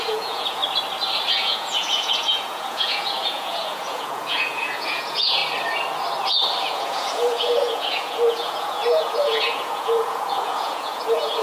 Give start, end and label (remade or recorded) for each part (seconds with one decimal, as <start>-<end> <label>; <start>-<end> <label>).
0.0-0.6 remade; 0.6-1.3 recorded; 1.3-5.4 remade; 5.4-6.6 recorded; 6.6-11.4 remade